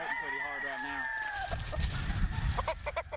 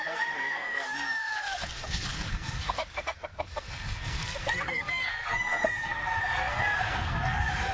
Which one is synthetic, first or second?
second